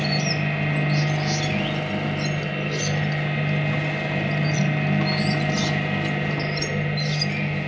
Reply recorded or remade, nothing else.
recorded